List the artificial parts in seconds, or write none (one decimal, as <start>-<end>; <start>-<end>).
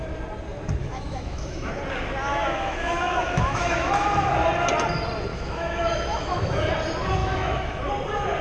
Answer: 0.8-1.7; 2.3-3.9; 5.3-6.7; 7.2-7.9